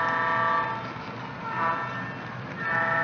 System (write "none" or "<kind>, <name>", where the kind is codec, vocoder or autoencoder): none